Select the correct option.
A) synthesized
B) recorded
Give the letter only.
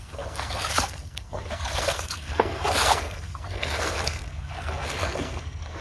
A